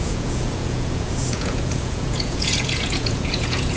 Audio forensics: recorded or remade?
remade